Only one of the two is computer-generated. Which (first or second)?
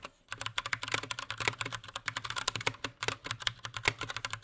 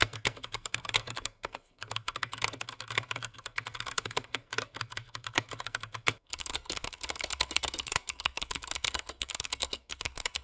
second